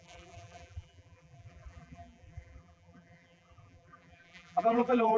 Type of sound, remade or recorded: remade